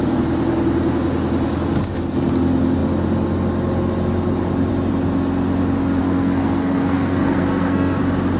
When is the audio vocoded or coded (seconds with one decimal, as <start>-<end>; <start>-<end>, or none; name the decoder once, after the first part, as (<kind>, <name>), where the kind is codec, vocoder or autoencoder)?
6.0-8.0 (codec, SNAC)